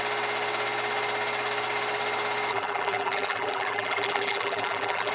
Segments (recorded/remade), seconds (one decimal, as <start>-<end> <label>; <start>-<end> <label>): 0.0-2.5 recorded; 2.5-5.1 remade